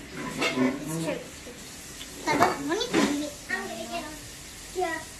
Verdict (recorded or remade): recorded